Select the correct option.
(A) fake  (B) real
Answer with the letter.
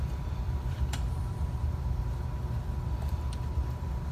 A